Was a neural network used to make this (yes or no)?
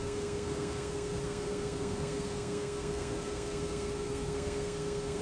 yes